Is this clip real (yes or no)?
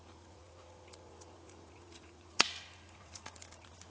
no